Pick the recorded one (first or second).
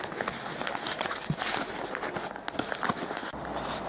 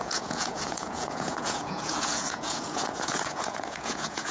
first